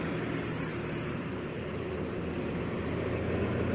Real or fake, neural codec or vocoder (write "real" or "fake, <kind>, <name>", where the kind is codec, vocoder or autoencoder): real